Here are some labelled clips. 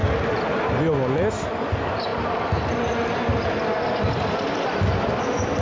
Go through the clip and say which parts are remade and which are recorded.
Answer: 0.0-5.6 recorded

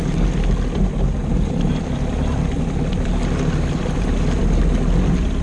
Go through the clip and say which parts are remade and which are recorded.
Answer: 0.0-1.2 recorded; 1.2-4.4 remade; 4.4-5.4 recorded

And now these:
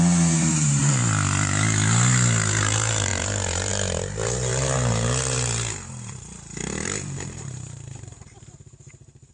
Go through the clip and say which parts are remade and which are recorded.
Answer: 0.0-1.0 remade; 1.0-2.6 recorded; 2.6-9.3 remade